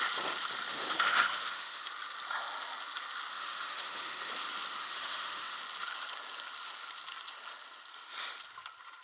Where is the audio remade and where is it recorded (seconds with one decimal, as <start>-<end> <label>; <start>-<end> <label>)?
0.0-0.7 recorded; 0.7-1.9 remade; 1.9-3.3 recorded; 3.3-4.3 remade; 4.3-4.8 recorded; 4.8-5.6 remade; 5.6-9.0 recorded

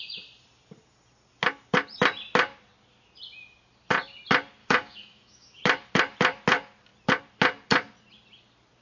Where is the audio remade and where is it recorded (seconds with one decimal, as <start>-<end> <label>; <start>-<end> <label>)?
0.0-4.6 recorded; 4.6-5.6 remade; 5.6-8.8 recorded

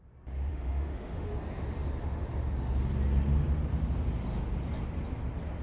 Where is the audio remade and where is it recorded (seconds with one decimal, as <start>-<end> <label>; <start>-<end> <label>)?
0.0-0.5 recorded; 0.5-1.3 remade; 1.3-5.6 recorded

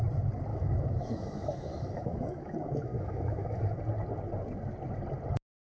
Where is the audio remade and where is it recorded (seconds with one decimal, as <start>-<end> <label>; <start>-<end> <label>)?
0.0-0.5 recorded; 0.5-3.8 remade; 3.8-5.6 recorded

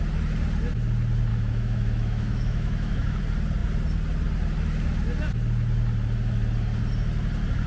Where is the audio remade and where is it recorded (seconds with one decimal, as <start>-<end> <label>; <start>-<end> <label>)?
0.0-1.3 recorded; 1.3-3.2 remade; 3.2-7.7 recorded